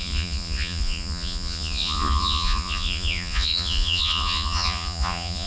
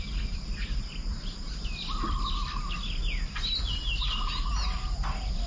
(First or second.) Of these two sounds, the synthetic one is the first